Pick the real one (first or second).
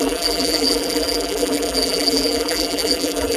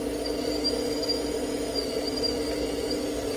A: second